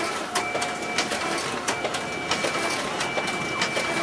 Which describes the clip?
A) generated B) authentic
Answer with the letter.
B